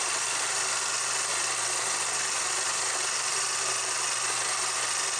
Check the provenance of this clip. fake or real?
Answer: fake